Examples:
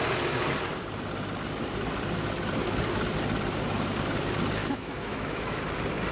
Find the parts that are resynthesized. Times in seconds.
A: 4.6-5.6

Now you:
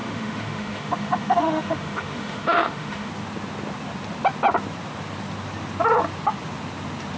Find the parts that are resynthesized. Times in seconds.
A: 0.0-3.1

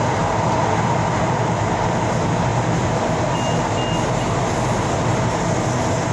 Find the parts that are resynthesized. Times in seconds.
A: none

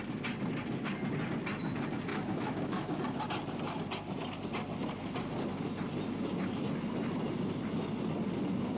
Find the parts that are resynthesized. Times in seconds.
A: 2.1-3.0

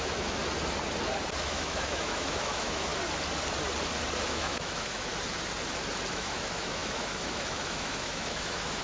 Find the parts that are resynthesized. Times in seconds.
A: 0.0-0.4; 1.4-2.9; 4.2-5.1; 6.1-8.8

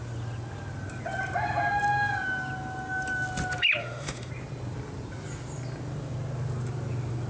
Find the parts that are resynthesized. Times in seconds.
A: 3.8-4.3